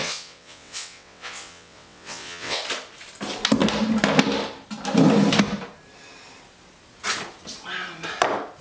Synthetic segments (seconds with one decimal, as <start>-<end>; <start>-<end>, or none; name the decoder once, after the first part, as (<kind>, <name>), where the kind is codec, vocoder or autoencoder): 0.0-2.6 (vocoder, WaveNeXt)